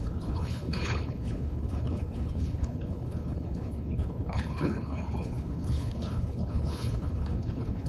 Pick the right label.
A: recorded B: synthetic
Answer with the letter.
B